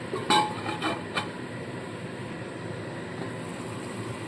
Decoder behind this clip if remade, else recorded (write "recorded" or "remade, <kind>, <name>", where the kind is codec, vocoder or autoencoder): recorded